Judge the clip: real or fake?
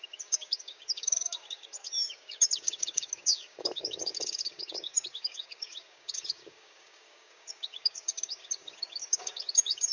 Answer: fake